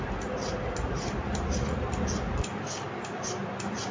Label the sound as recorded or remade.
recorded